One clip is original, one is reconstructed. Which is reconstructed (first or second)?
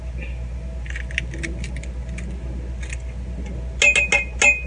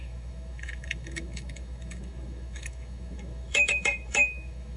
second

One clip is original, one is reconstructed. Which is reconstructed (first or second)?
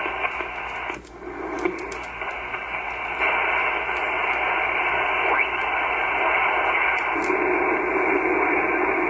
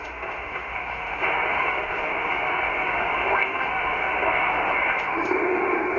second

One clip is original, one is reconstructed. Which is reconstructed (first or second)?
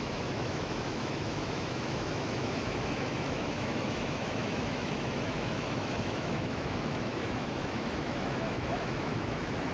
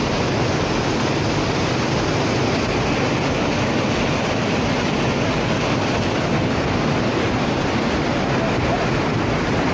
first